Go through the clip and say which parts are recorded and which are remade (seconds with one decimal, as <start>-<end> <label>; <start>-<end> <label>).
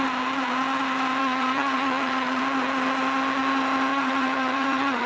0.0-1.2 recorded; 1.2-2.4 remade; 2.4-3.9 recorded; 3.9-5.1 remade